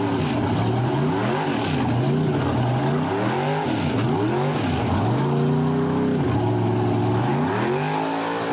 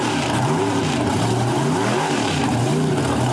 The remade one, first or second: second